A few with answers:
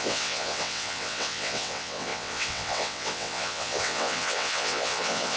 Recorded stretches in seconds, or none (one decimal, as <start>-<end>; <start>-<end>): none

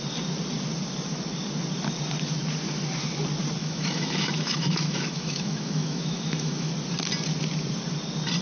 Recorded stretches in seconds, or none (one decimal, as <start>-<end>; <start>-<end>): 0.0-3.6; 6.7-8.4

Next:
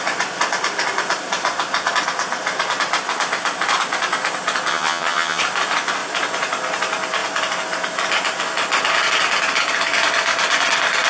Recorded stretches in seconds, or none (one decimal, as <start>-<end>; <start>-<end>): 0.0-4.7; 5.4-11.1

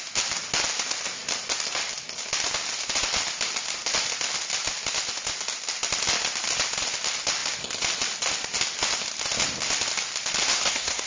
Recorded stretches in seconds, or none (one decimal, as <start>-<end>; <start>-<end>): 0.0-10.5

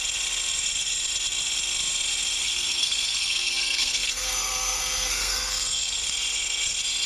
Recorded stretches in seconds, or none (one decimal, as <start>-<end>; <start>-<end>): 0.0-2.4; 6.1-7.1

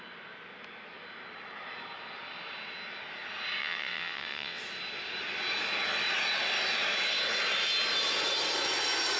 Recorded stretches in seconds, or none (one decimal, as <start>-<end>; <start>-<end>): 0.0-3.6; 4.6-9.2